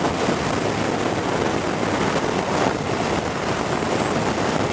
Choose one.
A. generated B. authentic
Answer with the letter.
B